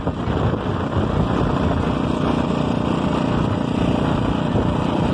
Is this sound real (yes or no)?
yes